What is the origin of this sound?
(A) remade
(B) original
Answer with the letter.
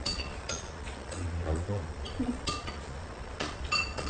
A